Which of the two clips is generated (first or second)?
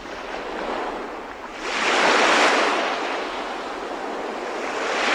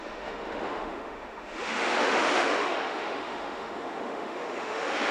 second